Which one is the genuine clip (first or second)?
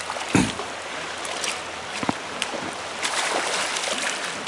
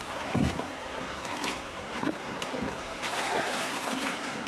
first